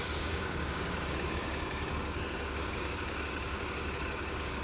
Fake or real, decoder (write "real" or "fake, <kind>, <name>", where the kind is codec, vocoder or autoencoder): fake, codec, DAC